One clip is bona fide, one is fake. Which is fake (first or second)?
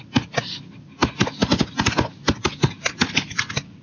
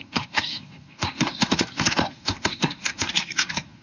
second